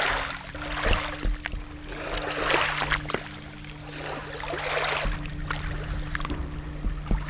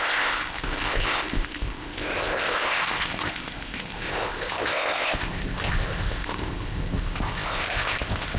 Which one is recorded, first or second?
first